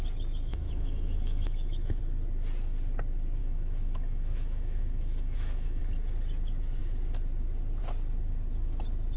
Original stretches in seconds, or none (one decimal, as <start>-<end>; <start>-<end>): 0.0-0.5; 2.0-3.4; 5.8-9.2